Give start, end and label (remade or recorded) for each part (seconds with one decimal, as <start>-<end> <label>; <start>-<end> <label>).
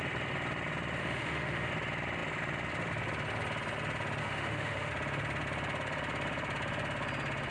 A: 0.0-1.0 recorded; 1.0-1.7 remade; 1.7-4.2 recorded; 4.2-4.9 remade; 4.9-7.5 recorded